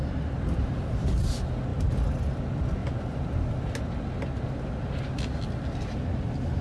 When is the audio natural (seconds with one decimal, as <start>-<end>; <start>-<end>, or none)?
0.0-6.6